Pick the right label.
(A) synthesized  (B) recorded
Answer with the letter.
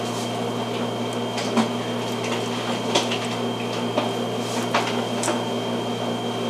B